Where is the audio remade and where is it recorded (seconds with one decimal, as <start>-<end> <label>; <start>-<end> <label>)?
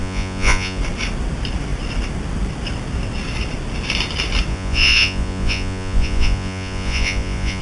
0.0-0.8 remade; 0.8-4.5 recorded; 4.5-7.6 remade